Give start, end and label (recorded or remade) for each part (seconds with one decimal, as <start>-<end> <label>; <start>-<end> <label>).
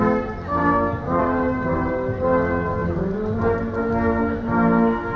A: 0.0-0.6 recorded; 0.6-1.2 remade; 1.2-5.2 recorded